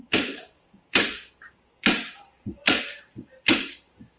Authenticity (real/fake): fake